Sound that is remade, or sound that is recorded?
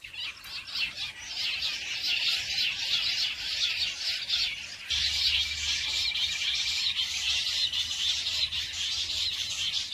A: recorded